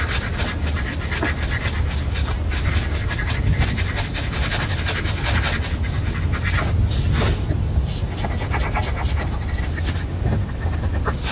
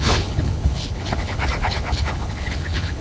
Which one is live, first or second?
first